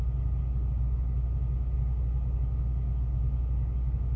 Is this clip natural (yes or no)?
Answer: yes